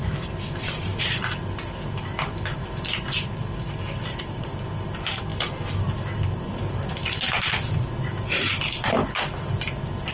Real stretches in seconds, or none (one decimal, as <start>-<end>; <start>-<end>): 9.0-10.1